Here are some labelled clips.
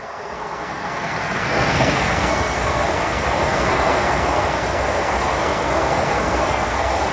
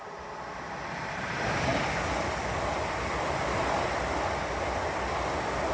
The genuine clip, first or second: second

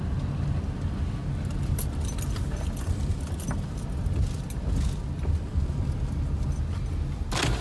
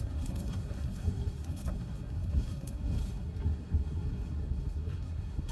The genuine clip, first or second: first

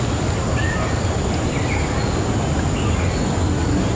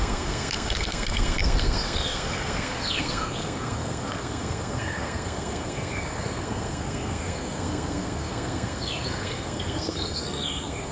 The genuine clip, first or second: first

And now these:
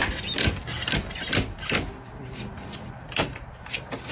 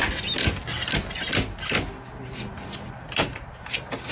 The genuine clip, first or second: second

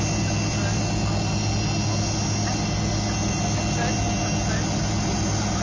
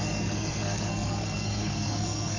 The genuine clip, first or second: first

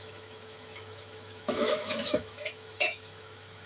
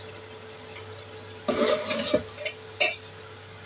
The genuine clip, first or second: second